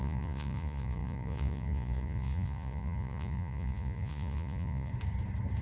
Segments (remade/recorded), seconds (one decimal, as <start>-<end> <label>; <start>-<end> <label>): 0.0-4.9 remade; 4.9-5.6 recorded